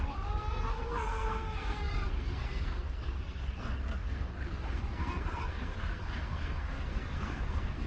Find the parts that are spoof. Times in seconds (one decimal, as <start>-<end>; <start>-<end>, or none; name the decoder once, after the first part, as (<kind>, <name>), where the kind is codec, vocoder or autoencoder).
0.0-7.9 (codec, SNAC)